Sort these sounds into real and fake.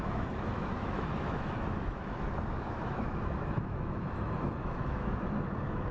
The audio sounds fake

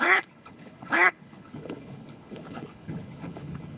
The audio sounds fake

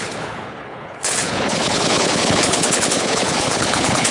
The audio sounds fake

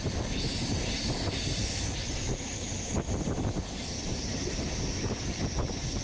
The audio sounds real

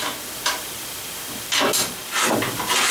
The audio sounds real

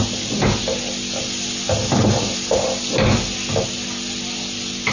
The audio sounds real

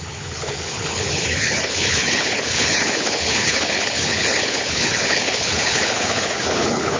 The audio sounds fake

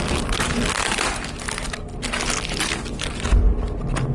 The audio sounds real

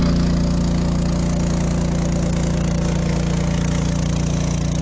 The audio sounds real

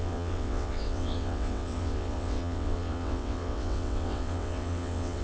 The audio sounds fake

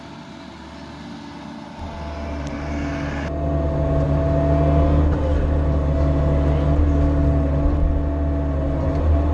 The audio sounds real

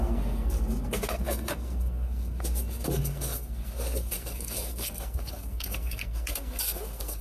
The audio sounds fake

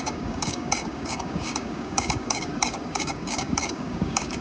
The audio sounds fake